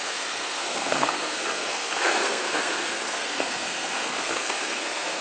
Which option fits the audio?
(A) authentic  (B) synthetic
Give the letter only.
B